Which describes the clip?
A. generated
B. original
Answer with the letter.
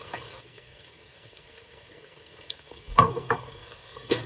A